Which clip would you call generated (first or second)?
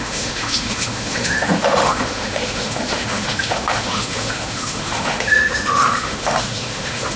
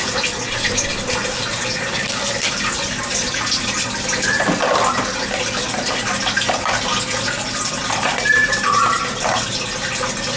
first